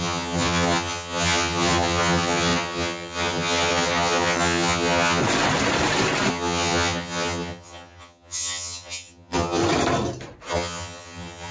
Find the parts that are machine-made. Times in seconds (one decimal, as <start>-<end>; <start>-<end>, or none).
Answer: 0.0-5.2; 6.3-9.6; 10.5-11.5